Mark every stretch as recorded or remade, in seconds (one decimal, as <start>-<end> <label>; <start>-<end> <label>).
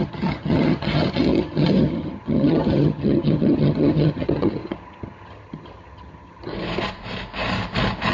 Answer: 0.0-6.5 remade; 6.5-8.1 recorded